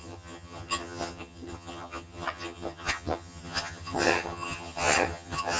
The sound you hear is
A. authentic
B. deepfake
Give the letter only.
B